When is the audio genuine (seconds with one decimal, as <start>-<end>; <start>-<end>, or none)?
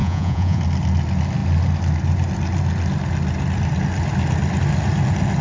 0.6-5.4